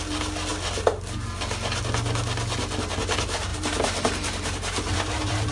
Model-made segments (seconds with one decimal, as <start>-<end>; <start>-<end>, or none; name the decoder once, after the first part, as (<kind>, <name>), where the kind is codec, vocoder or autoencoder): 3.5-5.5 (vocoder, BigVGAN v2)